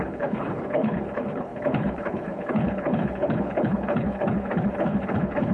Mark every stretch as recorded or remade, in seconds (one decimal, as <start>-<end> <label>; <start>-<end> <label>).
0.0-5.5 remade